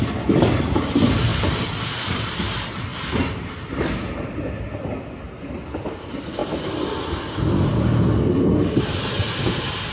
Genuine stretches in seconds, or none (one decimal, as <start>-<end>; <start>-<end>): 0.0-9.9